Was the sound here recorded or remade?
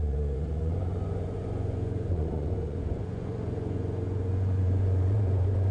remade